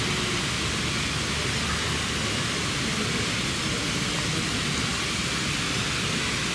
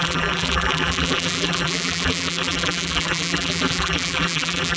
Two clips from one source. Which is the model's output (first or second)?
second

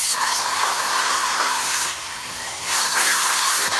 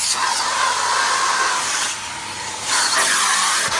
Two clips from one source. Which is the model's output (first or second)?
first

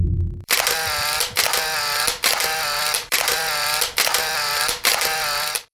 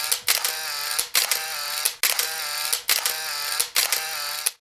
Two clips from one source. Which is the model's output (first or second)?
first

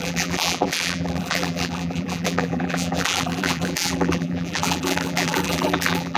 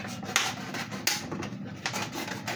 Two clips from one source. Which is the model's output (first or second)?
first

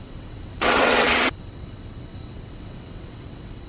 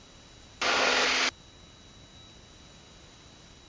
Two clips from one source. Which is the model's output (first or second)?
first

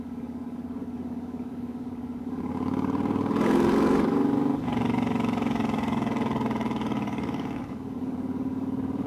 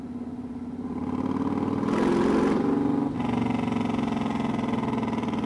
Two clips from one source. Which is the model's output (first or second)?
first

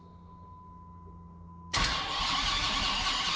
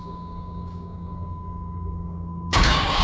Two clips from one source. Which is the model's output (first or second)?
second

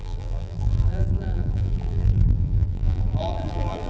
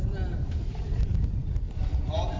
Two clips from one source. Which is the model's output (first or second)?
first